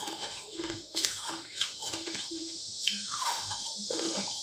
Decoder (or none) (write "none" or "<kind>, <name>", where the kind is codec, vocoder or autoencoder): autoencoder, DAC-VAE